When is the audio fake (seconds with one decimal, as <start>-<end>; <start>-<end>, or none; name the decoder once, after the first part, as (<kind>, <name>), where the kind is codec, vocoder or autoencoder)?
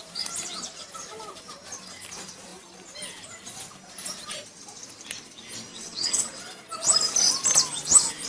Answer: 5.7-6.4 (vocoder, WaveNeXt)